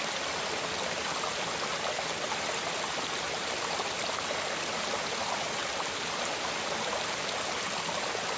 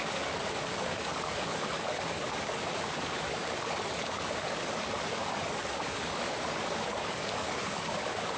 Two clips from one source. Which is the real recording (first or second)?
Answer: first